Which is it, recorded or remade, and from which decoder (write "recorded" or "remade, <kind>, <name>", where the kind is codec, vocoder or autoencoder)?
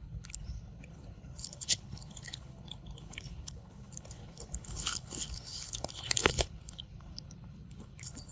remade, codec, HILCodec